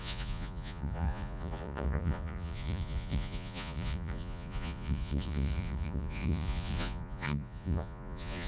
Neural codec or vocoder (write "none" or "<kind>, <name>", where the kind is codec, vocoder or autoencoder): vocoder, Vocos